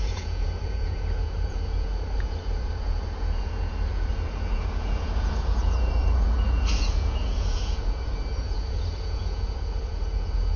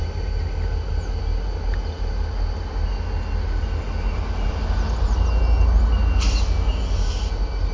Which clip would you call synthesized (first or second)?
first